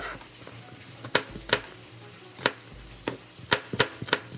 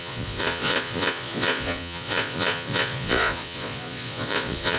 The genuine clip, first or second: first